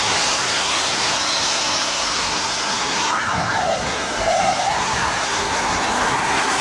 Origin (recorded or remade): remade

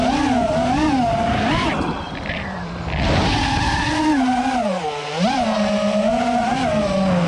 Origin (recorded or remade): recorded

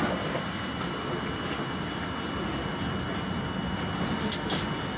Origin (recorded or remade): recorded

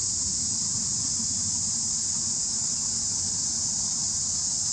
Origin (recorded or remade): recorded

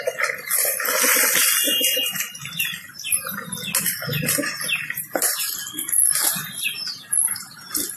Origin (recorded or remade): recorded